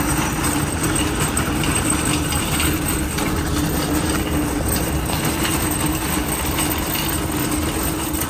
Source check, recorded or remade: recorded